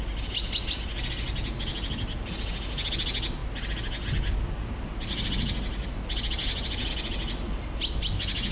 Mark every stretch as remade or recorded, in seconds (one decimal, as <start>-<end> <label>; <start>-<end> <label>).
0.0-8.5 recorded